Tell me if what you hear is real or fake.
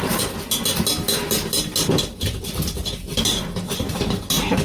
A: real